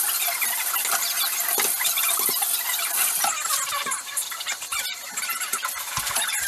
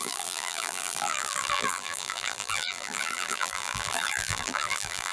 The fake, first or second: second